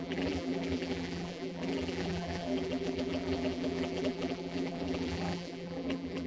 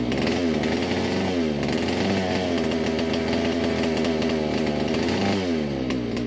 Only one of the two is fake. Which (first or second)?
first